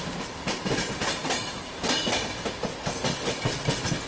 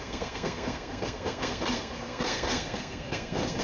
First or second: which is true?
first